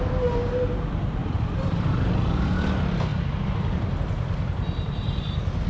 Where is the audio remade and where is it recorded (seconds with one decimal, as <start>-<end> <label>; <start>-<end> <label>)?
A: 0.0-1.2 recorded; 1.2-1.9 remade; 1.9-3.1 recorded; 3.1-4.0 remade; 4.0-5.7 recorded